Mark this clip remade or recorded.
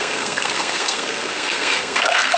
remade